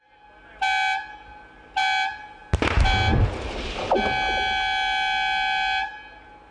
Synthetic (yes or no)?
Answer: no